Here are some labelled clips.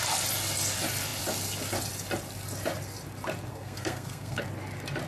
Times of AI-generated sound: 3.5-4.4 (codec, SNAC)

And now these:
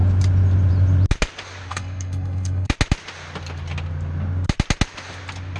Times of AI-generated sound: 1.7-2.7 (codec, SNAC)

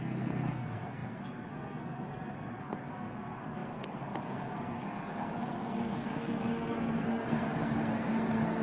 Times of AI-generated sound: 0.0-8.6 (codec, SNAC)

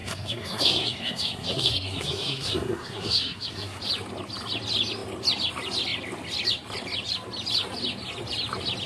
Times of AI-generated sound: 0.0-3.8 (codec, SNAC)

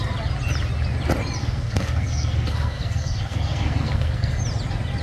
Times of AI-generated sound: 1.4-4.4 (codec, SNAC)